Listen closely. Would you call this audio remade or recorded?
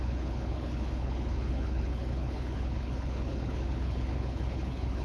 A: remade